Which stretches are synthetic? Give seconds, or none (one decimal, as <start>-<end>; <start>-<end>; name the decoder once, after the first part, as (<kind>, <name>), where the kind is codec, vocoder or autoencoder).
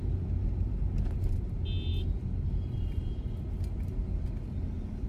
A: 1.9-3.4 (vocoder, BigVGAN v2)